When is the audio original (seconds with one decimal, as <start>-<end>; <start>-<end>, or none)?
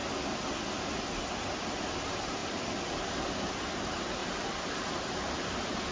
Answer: 0.0-1.6; 2.4-3.5